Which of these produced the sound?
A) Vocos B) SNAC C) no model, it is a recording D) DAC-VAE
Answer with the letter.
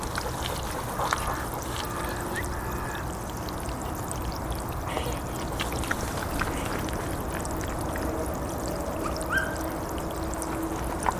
C